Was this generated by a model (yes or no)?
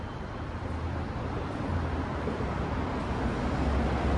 no